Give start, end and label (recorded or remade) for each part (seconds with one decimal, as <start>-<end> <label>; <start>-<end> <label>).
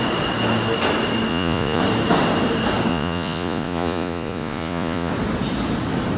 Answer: 0.0-1.3 recorded; 1.3-1.8 remade; 1.8-2.9 recorded; 2.9-5.1 remade; 5.1-6.2 recorded